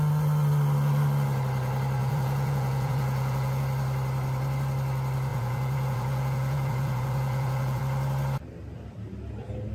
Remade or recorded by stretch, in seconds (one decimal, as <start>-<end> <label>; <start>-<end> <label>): 0.0-2.0 recorded; 2.0-3.6 remade; 3.6-5.3 recorded; 5.3-7.8 remade; 7.8-9.7 recorded